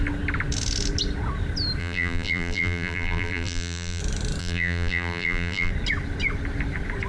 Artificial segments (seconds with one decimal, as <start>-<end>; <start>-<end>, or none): 1.8-4.0; 4.4-5.7